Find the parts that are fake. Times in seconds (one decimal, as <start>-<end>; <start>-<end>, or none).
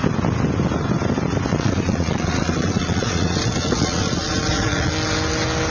1.5-4.9